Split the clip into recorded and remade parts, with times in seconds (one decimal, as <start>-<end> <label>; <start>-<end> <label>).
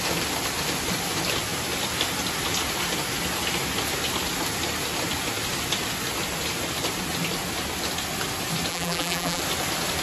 0.0-8.7 recorded; 8.7-9.4 remade; 9.4-10.0 recorded